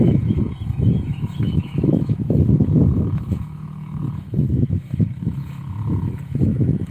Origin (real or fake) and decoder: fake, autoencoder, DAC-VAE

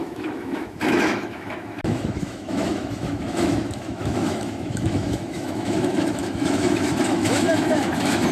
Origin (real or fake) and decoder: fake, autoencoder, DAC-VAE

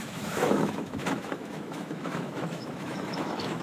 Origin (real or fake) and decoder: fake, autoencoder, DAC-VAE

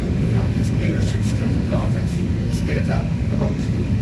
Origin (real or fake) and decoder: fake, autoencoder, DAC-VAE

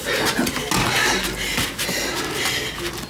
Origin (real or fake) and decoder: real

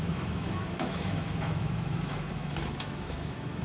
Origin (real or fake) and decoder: fake, autoencoder, DAC-VAE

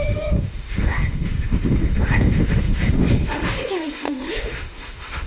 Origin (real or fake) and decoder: fake, autoencoder, DAC-VAE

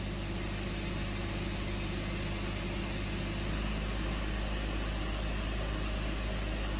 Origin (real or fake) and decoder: real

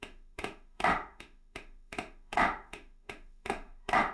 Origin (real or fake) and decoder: fake, autoencoder, DAC-VAE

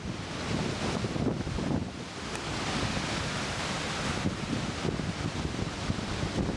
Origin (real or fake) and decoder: real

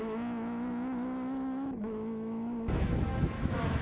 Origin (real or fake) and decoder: fake, autoencoder, DAC-VAE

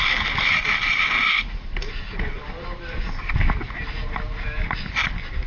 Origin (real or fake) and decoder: real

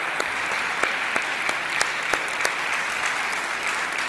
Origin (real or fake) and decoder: real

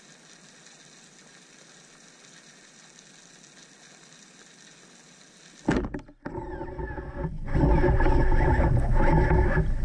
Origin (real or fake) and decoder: real